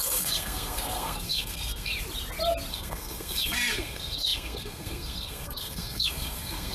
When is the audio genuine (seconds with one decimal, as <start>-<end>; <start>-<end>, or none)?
1.9-2.7